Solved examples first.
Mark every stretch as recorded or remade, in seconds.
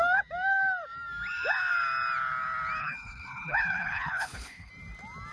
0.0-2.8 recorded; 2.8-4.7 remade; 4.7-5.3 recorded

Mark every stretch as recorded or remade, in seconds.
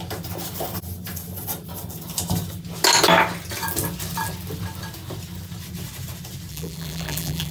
0.0-6.5 recorded; 6.5-7.5 remade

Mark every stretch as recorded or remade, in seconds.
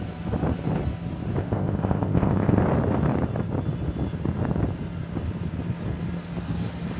0.0-1.4 recorded; 1.4-2.6 remade; 2.6-7.0 recorded